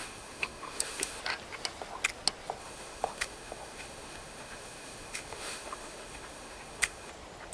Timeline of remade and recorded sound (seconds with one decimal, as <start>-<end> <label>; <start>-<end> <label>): 0.0-1.2 remade; 1.2-2.6 recorded; 2.6-7.1 remade; 7.1-7.5 recorded

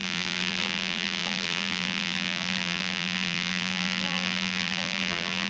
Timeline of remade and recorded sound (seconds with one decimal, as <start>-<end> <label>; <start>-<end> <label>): 0.0-5.5 remade

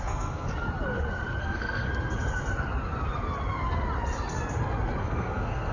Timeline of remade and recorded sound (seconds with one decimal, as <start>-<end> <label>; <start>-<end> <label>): 0.0-0.5 remade; 0.5-1.4 recorded; 1.4-1.9 remade; 1.9-5.0 recorded; 5.0-5.7 remade